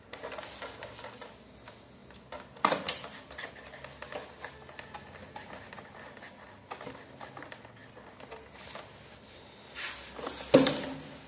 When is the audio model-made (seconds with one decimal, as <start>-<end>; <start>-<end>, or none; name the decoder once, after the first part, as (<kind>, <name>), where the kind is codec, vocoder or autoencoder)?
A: none